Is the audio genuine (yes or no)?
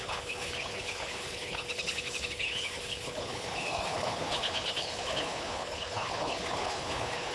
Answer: no